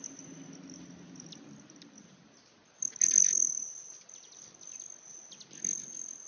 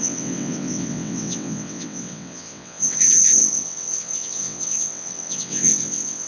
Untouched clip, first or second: first